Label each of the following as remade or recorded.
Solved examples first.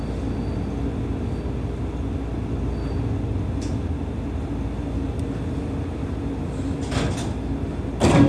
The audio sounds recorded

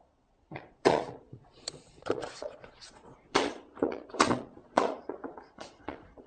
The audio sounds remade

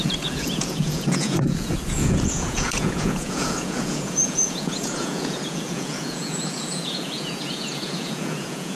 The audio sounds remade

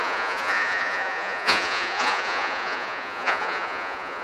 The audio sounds remade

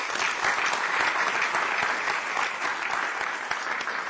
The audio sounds recorded